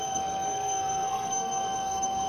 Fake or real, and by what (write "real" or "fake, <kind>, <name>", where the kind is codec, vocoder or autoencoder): fake, codec, SNAC